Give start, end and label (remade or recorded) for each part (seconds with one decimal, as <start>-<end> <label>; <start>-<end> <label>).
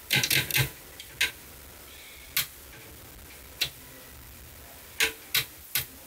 0.0-6.1 recorded